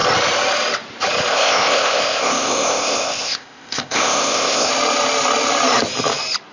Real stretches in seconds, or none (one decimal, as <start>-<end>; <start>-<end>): 0.0-1.3; 4.7-6.5